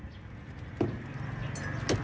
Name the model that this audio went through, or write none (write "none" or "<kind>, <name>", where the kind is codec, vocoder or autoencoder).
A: none